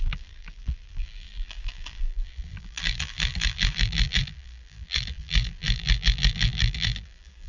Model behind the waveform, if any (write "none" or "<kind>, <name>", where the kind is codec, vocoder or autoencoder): vocoder, BigVGAN v2